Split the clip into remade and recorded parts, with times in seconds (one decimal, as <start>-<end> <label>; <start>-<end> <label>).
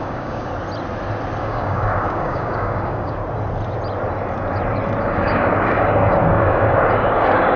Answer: 0.0-0.5 remade; 0.5-1.4 recorded; 1.4-3.2 remade; 3.2-5.0 recorded; 5.0-7.6 remade